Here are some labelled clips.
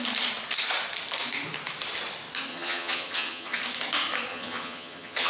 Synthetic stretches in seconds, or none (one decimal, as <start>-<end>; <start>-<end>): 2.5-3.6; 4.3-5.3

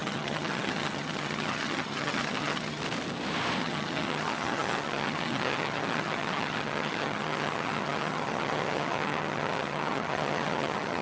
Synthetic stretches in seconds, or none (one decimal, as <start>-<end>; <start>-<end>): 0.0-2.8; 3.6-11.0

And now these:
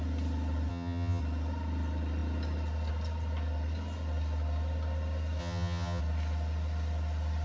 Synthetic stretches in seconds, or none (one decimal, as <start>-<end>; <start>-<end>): 0.7-1.2; 5.4-6.0

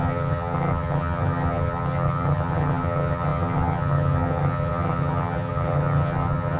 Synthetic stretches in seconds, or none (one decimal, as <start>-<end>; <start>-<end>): 0.0-6.6